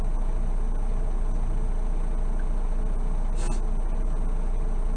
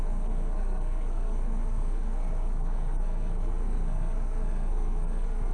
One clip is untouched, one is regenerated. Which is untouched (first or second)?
first